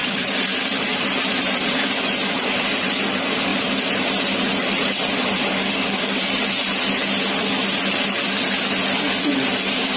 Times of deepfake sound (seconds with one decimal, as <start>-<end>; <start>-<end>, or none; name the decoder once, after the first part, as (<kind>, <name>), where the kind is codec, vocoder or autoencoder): 5.6-6.3 (codec, DAC)